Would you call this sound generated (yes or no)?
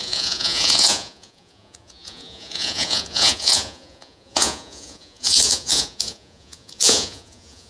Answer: yes